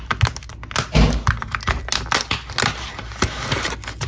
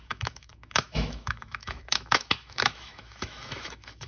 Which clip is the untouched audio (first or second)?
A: first